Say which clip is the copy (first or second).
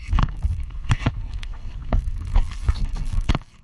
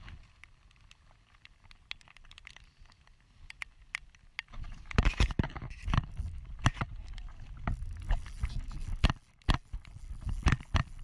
first